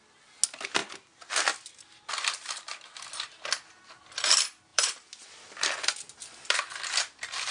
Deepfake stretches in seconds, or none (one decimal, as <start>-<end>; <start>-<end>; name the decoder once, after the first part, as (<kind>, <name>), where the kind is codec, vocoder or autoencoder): 4.7-7.5 (vocoder, BigVGAN v2)